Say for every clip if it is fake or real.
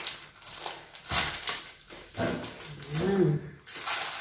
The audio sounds real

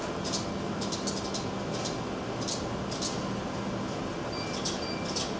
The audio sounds real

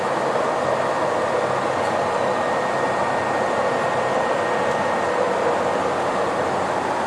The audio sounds real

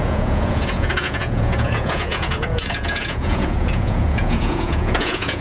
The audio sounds fake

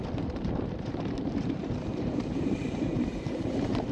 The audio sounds fake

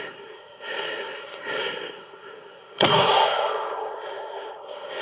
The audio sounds fake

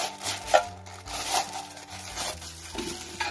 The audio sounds real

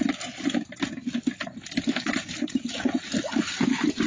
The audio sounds real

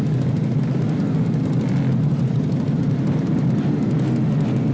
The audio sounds real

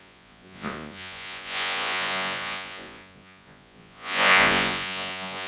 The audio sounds fake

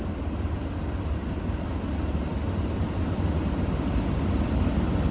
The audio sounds real